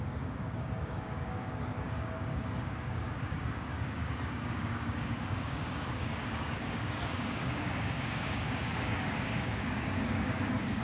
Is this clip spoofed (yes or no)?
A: yes